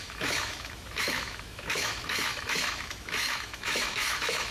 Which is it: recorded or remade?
remade